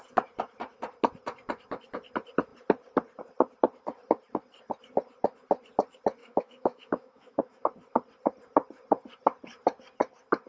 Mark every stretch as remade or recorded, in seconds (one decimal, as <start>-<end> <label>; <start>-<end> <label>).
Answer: 0.0-6.2 recorded; 6.2-7.6 remade; 7.6-10.5 recorded